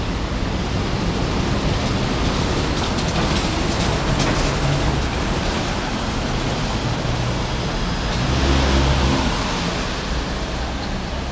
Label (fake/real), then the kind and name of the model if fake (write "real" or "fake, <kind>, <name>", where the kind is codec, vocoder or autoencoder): real